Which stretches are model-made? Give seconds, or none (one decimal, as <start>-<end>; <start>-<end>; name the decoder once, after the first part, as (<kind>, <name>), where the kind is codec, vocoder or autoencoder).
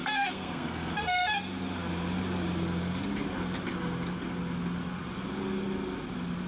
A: 0.0-1.3 (codec, SNAC)